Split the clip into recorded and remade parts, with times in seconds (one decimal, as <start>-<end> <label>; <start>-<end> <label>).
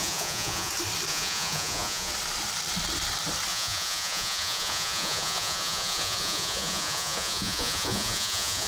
0.0-0.7 remade; 0.7-1.1 recorded; 1.1-2.1 remade; 2.1-3.5 recorded; 3.5-8.7 remade